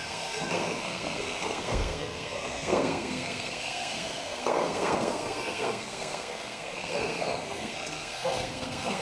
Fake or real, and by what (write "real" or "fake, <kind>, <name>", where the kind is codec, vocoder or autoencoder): fake, codec, SNAC